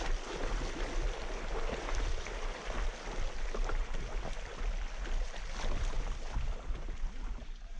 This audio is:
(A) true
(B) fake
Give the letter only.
A